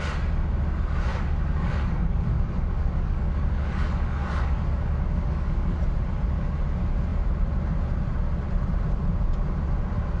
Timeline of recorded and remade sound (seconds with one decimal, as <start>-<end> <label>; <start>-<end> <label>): 0.0-1.1 recorded; 1.1-5.8 remade; 5.8-10.2 recorded